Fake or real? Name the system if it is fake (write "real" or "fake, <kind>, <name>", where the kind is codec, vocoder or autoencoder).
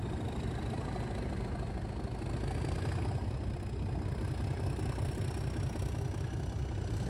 real